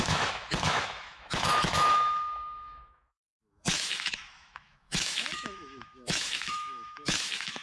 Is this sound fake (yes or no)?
yes